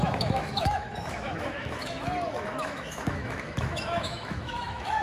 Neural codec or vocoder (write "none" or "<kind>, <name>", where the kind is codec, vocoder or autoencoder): autoencoder, DAC-VAE